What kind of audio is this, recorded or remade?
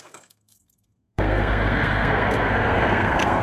remade